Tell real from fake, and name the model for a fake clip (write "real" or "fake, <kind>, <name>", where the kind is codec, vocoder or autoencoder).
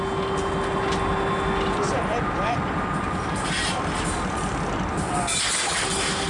real